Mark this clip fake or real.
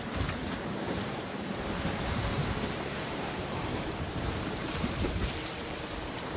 fake